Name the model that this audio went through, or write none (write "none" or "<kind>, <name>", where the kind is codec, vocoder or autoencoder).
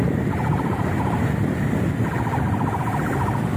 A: none